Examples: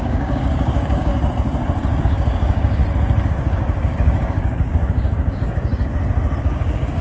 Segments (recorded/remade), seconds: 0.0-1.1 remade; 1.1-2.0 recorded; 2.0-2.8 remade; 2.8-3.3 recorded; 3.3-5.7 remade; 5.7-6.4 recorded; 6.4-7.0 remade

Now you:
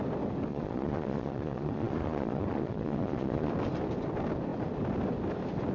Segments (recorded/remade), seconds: 0.0-0.5 recorded; 0.5-3.5 remade; 3.5-5.7 recorded

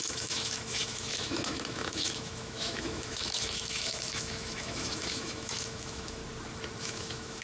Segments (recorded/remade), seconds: 0.0-6.2 remade; 6.2-6.8 recorded; 6.8-7.4 remade

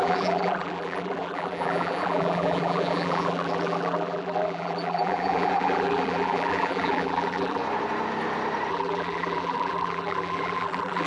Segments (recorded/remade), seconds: 0.0-7.6 remade; 7.6-8.7 recorded; 8.7-11.1 remade

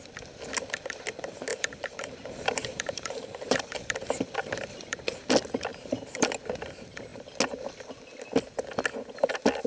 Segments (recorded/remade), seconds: 0.0-1.5 recorded; 1.5-5.3 remade; 5.3-5.7 recorded; 5.7-6.3 remade; 6.3-9.7 recorded

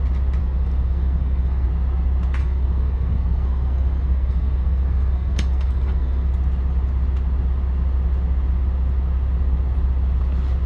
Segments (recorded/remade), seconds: 0.0-0.4 recorded; 0.4-1.7 remade; 1.7-2.4 recorded; 2.4-6.3 remade; 6.3-10.7 recorded

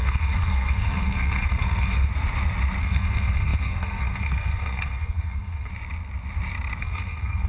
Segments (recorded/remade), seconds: 0.0-2.1 remade; 2.1-2.8 recorded; 2.8-5.7 remade; 5.7-6.8 recorded; 6.8-7.5 remade

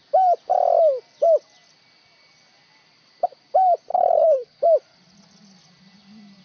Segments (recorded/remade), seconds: 0.0-3.9 recorded; 3.9-4.6 remade; 4.6-6.4 recorded